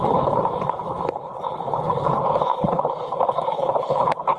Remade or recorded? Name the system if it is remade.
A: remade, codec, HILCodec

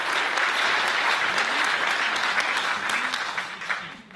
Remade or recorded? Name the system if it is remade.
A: recorded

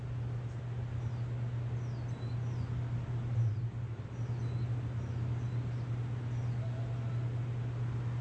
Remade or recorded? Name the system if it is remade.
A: recorded